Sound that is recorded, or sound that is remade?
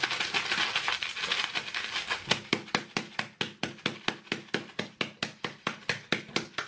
recorded